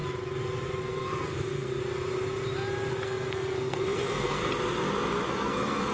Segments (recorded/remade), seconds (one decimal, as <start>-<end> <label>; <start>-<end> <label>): 0.0-0.8 recorded; 0.8-1.8 remade; 1.8-2.9 recorded; 2.9-4.4 remade; 4.4-5.3 recorded; 5.3-5.9 remade